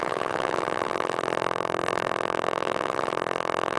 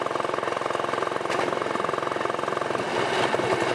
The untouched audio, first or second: second